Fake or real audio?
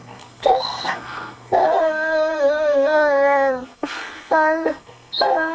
fake